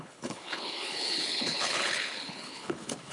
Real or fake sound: fake